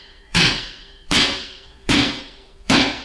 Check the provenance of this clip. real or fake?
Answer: fake